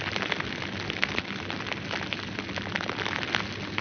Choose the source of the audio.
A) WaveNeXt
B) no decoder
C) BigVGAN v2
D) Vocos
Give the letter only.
B